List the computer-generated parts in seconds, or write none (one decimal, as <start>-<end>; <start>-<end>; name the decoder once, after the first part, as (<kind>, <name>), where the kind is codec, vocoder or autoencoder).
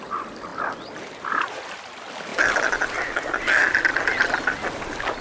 none